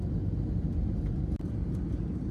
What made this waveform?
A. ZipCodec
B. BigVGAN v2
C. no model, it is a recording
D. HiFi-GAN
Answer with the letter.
C